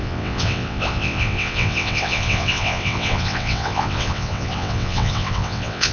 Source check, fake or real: fake